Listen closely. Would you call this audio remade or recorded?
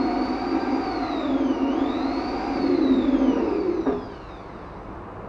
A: recorded